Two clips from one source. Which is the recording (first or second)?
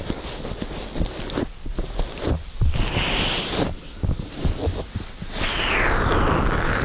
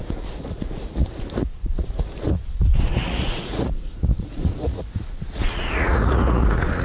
first